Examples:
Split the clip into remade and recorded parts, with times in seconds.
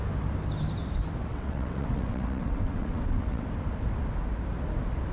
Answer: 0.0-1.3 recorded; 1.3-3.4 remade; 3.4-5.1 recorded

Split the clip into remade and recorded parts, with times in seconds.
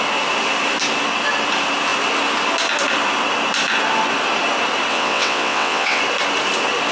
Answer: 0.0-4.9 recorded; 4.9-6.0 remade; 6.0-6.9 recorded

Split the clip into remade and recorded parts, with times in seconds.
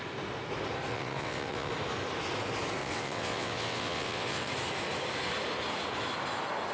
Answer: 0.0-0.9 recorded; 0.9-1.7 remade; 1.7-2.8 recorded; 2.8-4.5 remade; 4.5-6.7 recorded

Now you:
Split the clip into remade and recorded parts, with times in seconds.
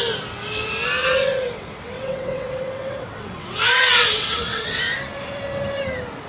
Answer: 0.0-1.0 recorded; 1.0-4.8 remade; 4.8-6.3 recorded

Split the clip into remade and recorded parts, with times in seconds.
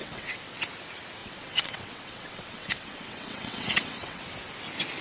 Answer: 0.0-0.6 remade; 0.6-1.2 recorded; 1.2-4.2 remade; 4.2-5.0 recorded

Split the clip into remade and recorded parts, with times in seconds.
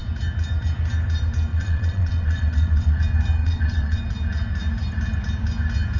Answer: 0.0-1.5 recorded; 1.5-3.0 remade; 3.0-3.4 recorded; 3.4-4.0 remade; 4.0-6.0 recorded